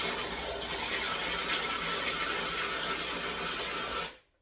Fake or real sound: real